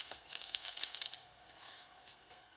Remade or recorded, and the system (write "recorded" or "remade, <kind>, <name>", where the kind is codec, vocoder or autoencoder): remade, codec, SNAC